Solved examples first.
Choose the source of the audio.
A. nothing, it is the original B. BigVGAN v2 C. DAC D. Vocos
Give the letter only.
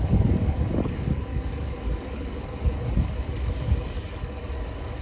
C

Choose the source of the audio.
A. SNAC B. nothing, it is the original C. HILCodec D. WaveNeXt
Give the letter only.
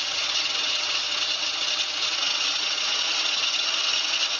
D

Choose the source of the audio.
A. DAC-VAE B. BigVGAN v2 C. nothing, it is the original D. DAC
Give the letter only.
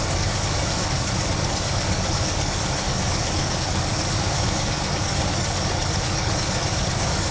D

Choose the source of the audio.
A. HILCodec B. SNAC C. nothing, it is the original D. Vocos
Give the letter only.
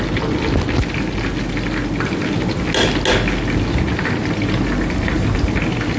C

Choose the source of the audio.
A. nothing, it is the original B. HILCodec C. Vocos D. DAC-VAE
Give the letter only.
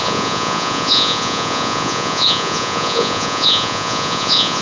C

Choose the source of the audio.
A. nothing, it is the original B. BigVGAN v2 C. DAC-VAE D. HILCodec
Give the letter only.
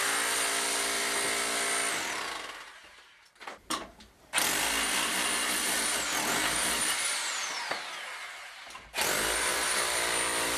A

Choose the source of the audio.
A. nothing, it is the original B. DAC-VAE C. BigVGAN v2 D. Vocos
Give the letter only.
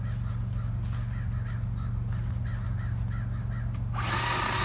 A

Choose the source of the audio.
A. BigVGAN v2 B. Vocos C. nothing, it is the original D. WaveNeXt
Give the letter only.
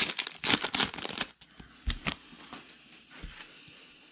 C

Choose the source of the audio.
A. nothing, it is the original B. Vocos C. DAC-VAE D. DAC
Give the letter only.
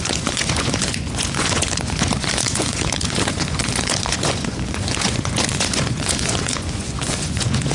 B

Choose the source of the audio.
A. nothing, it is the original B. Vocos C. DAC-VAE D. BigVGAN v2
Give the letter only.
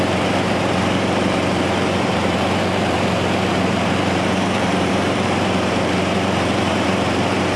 D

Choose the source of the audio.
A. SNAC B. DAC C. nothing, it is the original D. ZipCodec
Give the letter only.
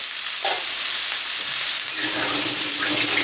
C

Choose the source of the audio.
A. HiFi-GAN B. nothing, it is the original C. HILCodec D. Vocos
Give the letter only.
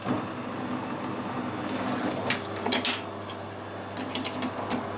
B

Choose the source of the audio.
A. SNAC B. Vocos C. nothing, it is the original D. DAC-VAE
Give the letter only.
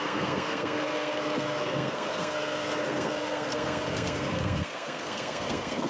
A